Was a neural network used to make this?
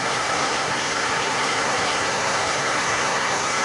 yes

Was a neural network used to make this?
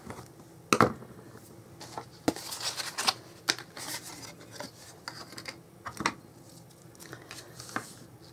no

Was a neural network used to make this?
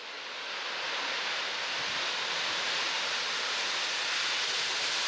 no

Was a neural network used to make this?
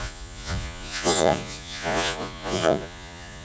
yes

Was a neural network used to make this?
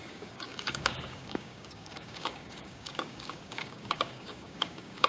yes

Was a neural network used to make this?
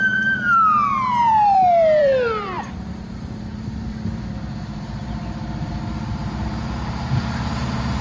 yes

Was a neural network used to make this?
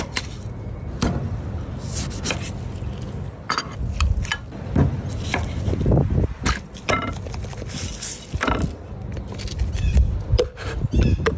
no